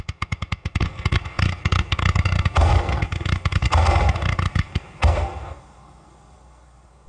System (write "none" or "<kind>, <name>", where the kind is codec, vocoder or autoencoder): codec, SNAC